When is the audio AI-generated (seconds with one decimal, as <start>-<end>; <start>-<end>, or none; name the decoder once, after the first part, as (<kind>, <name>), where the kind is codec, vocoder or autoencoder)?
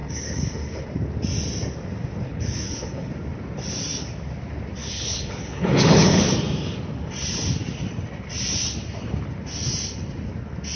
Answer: 0.0-0.9 (codec, HILCodec); 2.3-3.1; 4.8-6.3